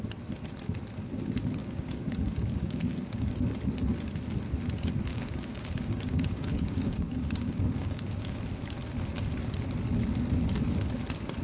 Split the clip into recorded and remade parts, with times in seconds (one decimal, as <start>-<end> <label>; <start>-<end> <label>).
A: 0.0-1.6 recorded; 1.6-3.3 remade; 3.3-5.1 recorded; 5.1-8.4 remade; 8.4-11.4 recorded